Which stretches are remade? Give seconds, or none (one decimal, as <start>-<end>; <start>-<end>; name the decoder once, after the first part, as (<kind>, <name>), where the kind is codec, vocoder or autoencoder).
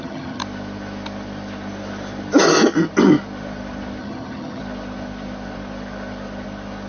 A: 0.0-0.4 (vocoder, HiFi-GAN); 4.0-4.6